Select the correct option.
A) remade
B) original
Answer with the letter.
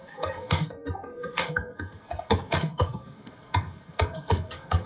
A